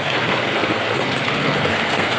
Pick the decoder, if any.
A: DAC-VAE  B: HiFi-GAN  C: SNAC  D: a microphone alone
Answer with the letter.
C